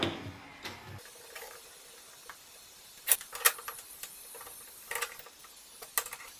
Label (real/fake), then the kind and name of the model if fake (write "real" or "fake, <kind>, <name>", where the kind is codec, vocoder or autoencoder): real